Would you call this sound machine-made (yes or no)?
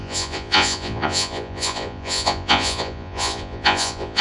yes